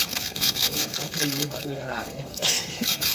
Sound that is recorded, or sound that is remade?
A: remade